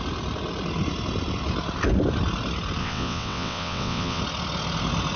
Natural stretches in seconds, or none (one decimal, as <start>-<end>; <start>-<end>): 0.0-2.8; 4.2-5.2